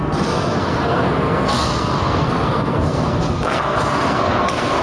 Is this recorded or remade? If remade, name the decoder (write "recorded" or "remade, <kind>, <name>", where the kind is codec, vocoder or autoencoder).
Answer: remade, codec, SNAC